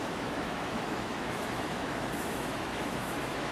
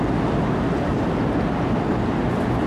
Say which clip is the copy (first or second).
first